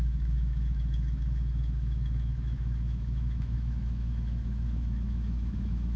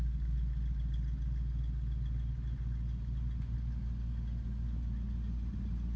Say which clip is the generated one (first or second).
first